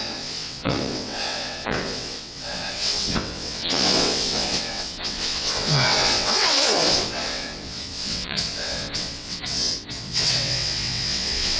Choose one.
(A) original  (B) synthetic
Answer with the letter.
B